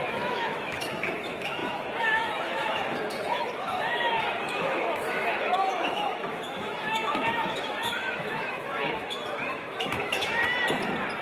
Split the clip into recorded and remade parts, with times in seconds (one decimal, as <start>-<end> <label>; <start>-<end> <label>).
0.0-10.4 remade; 10.4-11.2 recorded